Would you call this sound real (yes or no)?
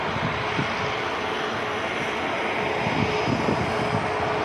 yes